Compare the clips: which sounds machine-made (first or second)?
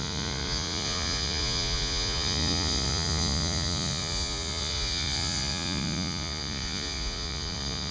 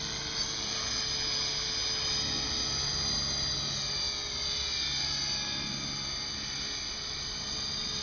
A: first